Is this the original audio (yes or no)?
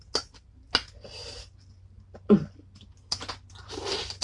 yes